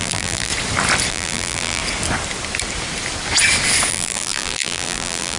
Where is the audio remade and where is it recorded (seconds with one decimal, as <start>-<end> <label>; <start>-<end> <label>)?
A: 0.0-0.5 remade; 0.5-1.1 recorded; 1.1-1.8 remade; 1.8-3.9 recorded; 3.9-5.4 remade